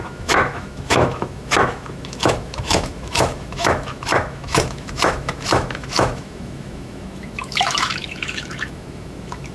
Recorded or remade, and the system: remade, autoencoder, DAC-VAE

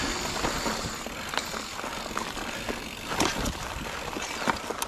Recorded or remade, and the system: recorded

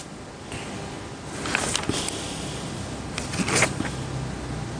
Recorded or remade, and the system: recorded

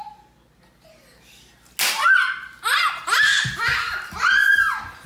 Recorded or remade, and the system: recorded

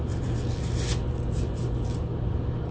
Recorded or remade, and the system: recorded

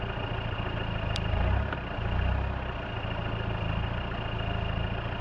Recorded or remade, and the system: recorded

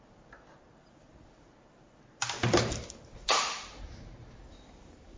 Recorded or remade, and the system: remade, vocoder, BigVGAN v2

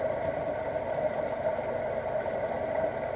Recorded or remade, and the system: recorded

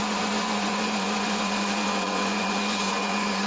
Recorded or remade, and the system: remade, vocoder, Vocos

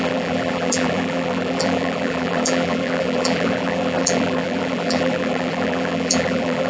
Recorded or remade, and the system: remade, vocoder, BigVGAN v2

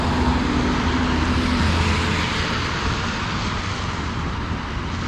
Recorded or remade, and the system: recorded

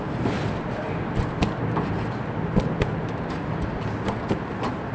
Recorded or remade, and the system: recorded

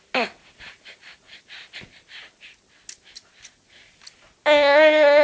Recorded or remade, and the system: recorded